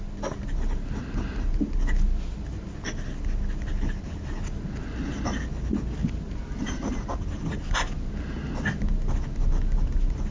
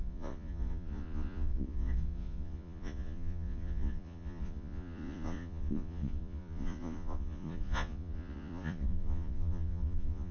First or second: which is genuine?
first